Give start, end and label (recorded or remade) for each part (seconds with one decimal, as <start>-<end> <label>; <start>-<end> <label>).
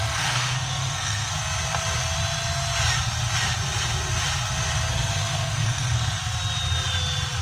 0.0-1.3 remade; 1.3-4.9 recorded; 4.9-6.2 remade; 6.2-7.4 recorded